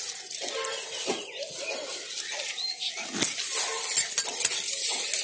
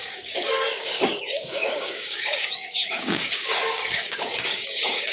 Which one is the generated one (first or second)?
second